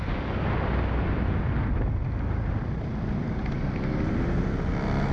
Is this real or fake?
real